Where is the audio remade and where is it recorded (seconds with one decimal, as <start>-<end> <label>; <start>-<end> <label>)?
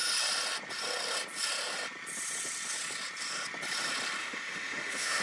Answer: 0.0-4.2 recorded; 4.2-5.2 remade